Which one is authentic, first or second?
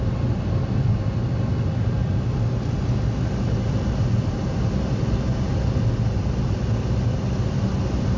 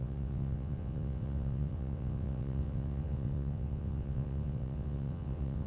first